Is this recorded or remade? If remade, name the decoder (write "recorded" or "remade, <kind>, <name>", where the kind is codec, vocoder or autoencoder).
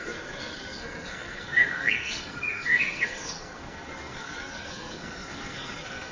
remade, codec, SNAC